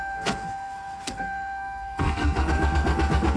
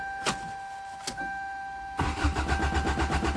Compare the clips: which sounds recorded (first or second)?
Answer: second